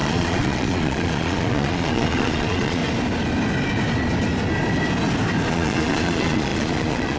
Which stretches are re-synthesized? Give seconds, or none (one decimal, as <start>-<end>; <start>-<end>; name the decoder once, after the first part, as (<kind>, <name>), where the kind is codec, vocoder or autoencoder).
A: 0.0-2.8 (vocoder, Vocos); 5.5-7.2